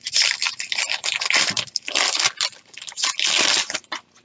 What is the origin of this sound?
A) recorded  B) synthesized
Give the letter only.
B